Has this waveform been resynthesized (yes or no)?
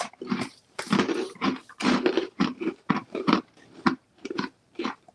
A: yes